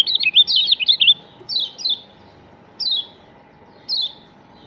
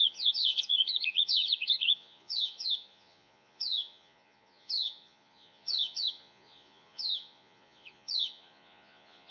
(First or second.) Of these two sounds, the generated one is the second